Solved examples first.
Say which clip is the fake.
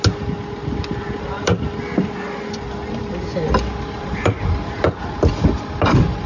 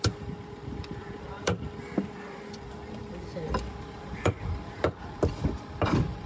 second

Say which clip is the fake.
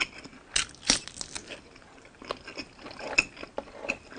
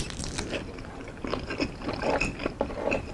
second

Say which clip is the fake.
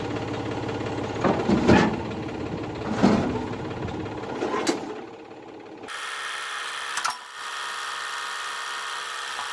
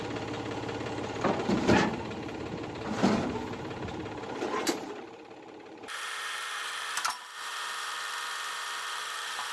second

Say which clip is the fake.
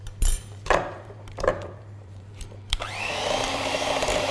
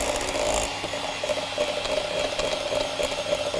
first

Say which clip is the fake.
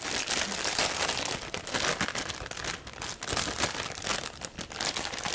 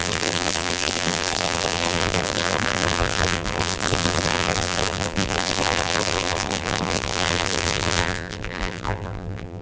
second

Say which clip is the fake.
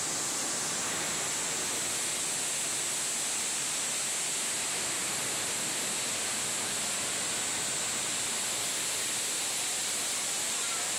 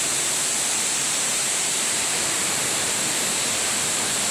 second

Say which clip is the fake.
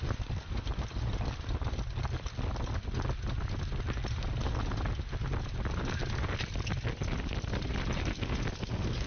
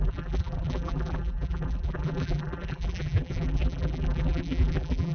second